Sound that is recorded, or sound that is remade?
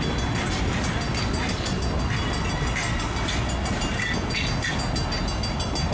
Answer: recorded